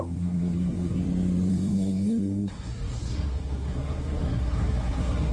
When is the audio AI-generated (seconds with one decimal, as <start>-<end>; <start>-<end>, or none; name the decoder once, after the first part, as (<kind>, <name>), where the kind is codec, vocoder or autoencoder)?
0.0-1.0 (codec, SNAC); 1.5-5.3